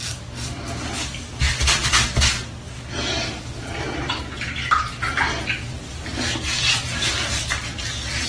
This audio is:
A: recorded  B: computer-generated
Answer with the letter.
A